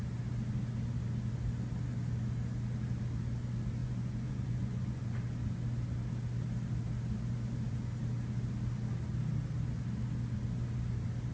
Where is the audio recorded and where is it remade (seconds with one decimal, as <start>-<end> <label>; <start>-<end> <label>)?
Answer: 0.0-3.8 recorded; 3.8-5.0 remade; 5.0-11.3 recorded

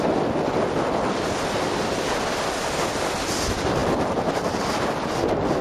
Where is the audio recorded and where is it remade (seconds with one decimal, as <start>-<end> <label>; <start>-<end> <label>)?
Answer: 0.0-5.6 recorded

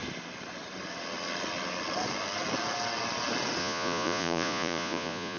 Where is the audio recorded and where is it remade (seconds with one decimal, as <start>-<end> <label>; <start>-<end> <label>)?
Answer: 0.0-3.6 recorded; 3.6-5.4 remade

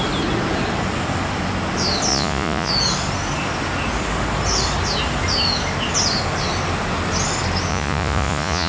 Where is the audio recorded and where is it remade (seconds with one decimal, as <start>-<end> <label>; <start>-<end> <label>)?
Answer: 0.0-2.1 recorded; 2.1-2.7 remade; 2.7-7.7 recorded; 7.7-8.7 remade

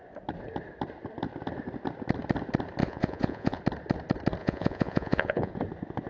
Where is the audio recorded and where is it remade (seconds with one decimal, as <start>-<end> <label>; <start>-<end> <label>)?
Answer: 0.0-2.8 recorded; 2.8-3.6 remade; 3.6-4.4 recorded; 4.4-5.5 remade; 5.5-6.1 recorded

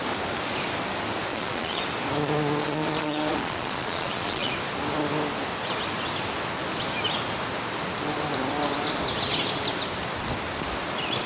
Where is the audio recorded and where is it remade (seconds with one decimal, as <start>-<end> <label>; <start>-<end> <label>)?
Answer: 0.0-1.3 recorded; 1.3-1.8 remade; 1.8-2.6 recorded; 2.6-4.5 remade; 4.5-11.3 recorded

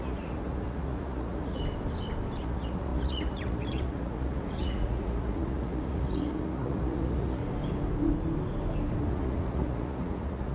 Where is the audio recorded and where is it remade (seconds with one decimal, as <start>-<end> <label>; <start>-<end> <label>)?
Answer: 0.0-1.6 remade; 1.6-2.4 recorded; 2.4-7.4 remade; 7.4-9.1 recorded; 9.1-10.5 remade